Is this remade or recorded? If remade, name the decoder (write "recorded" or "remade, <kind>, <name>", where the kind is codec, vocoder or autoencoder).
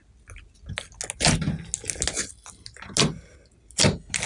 recorded